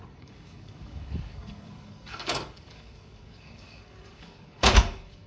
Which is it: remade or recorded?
remade